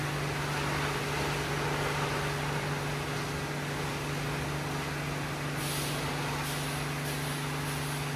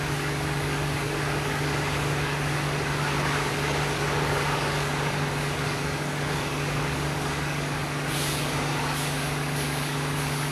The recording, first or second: first